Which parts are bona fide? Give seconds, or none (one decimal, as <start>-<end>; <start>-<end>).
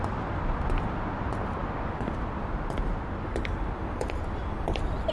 0.0-5.1